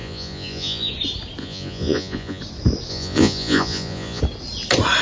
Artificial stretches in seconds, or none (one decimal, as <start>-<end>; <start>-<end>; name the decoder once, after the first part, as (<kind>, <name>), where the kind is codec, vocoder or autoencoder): 0.0-0.9 (vocoder, Vocos); 1.4-2.4; 2.9-4.2

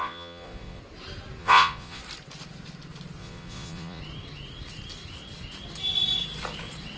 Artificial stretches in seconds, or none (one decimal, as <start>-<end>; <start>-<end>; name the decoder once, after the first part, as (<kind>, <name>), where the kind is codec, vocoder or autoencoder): 0.0-0.8 (vocoder, Vocos); 1.4-2.0; 3.2-4.0